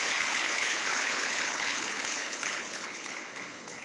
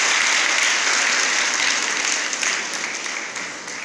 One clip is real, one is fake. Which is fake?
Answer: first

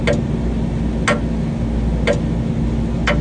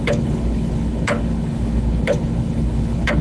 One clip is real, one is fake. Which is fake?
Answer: second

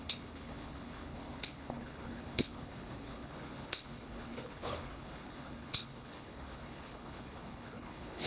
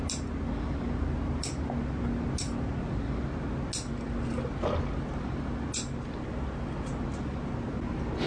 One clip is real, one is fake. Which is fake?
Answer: first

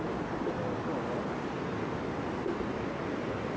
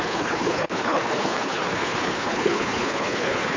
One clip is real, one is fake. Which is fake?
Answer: second